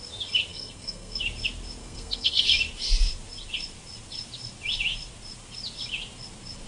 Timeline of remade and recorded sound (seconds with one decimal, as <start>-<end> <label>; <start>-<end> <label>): 0.0-0.5 recorded; 0.5-1.2 remade; 1.2-1.8 recorded; 1.8-2.4 remade; 2.4-6.7 recorded